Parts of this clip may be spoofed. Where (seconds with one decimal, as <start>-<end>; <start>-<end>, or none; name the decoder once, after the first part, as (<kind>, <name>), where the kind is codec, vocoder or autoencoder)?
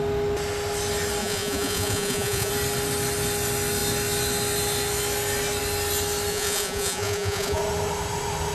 1.2-2.5 (vocoder, Vocos); 6.3-7.6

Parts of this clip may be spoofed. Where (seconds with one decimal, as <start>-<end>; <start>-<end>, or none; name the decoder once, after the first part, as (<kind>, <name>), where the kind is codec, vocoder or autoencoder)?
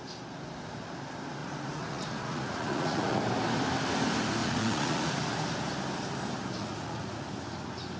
1.4-3.2 (vocoder, Vocos); 4.4-5.1; 6.6-7.3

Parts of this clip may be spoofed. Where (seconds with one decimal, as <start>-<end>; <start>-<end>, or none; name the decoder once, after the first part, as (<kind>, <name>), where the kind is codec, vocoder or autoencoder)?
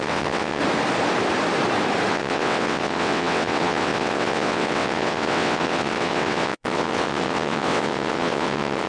0.0-0.6 (vocoder, WaveNeXt); 2.1-8.9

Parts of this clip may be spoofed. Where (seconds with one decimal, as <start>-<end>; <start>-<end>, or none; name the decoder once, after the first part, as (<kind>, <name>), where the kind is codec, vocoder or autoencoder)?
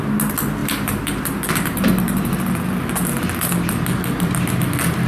0.6-2.5 (vocoder, BigVGAN v2)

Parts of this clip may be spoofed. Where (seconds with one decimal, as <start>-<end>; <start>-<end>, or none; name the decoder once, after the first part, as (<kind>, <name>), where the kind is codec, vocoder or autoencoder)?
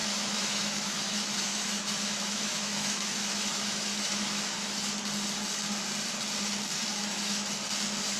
0.0-4.9 (autoencoder, DAC-VAE); 6.9-7.5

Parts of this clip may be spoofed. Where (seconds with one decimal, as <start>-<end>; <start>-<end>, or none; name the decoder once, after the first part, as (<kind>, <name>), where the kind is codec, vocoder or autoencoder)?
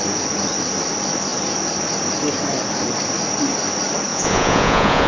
4.1-5.1 (vocoder, Vocos)